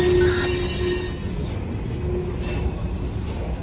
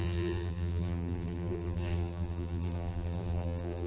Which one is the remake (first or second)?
second